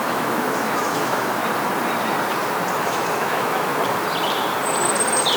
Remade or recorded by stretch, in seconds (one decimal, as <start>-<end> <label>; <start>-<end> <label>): 0.0-1.4 remade; 1.4-2.8 recorded; 2.8-3.7 remade; 3.7-5.4 recorded